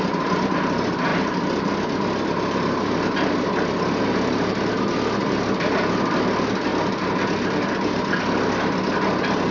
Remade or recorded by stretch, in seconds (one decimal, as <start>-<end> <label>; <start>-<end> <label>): 0.0-9.5 recorded